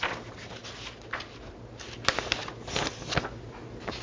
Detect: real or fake real